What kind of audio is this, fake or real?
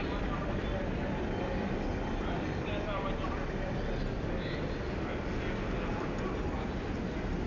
real